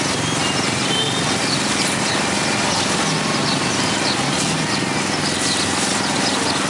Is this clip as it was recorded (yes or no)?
yes